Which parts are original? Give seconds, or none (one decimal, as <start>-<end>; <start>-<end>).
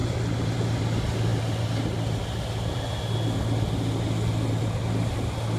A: 0.9-5.6